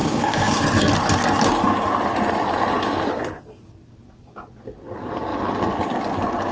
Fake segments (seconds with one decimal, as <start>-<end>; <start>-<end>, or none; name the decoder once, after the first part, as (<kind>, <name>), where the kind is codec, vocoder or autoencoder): 0.0-0.6 (codec, DAC)